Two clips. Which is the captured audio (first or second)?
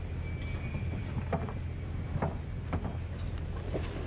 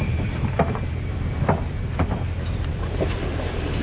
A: first